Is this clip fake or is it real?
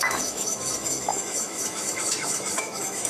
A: fake